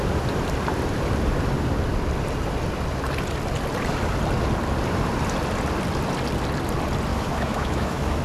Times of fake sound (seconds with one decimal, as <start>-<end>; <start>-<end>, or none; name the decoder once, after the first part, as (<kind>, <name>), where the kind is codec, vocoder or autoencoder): 7.1-8.2 (autoencoder, DAC-VAE)